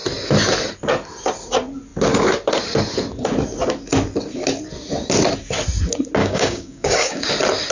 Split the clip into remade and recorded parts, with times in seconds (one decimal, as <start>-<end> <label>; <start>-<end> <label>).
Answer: 0.0-6.2 recorded; 6.2-7.3 remade; 7.3-7.7 recorded

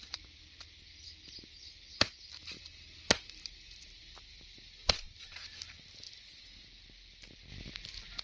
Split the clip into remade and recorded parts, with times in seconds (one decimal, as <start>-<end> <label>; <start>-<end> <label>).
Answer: 0.0-8.2 recorded

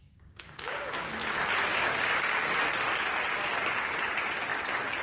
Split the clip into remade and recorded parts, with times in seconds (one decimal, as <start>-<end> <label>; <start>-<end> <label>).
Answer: 0.0-1.1 remade; 1.1-1.7 recorded; 1.7-2.6 remade; 2.6-5.0 recorded

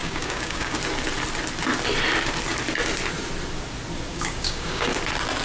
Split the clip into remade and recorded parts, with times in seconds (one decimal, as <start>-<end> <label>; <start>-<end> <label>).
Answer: 0.0-0.8 remade; 0.8-4.1 recorded; 4.1-4.9 remade; 4.9-5.4 recorded

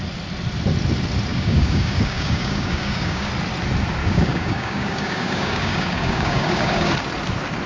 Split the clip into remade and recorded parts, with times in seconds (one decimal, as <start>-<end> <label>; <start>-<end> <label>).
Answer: 0.0-1.3 recorded; 1.3-3.3 remade; 3.3-4.0 recorded; 4.0-6.9 remade; 6.9-7.7 recorded